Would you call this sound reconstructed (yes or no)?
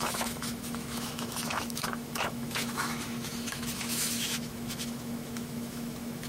yes